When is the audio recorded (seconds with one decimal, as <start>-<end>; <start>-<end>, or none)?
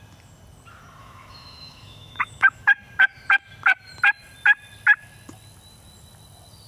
0.0-1.0; 2.7-6.7